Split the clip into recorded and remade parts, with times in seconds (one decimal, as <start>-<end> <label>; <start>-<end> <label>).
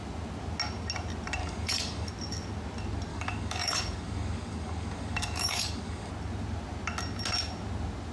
0.0-1.4 recorded; 1.4-2.1 remade; 2.1-3.1 recorded; 3.1-6.1 remade; 6.1-8.1 recorded